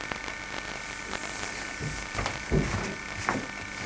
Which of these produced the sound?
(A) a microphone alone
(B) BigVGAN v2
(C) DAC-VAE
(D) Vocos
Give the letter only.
A